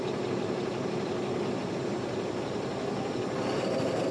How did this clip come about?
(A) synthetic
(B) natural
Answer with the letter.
B